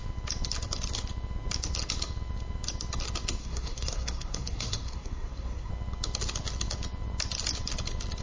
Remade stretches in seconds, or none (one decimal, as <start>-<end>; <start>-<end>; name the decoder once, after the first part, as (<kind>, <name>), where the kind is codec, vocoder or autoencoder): 3.4-5.7 (codec, SNAC)